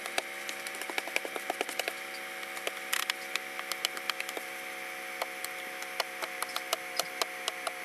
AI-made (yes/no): no